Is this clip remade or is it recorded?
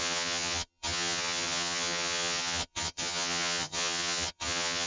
remade